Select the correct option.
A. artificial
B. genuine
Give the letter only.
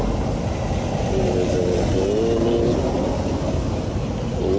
B